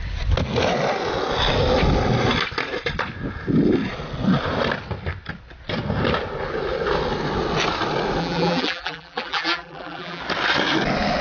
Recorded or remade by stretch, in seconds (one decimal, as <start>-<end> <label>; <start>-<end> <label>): 0.0-8.2 recorded; 8.2-10.2 remade; 10.2-11.2 recorded